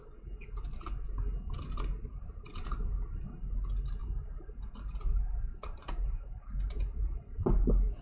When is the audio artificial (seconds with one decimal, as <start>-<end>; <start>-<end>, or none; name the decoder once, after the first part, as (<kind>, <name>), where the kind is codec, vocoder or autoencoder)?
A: 2.1-3.2 (vocoder, BigVGAN v2); 4.0-7.4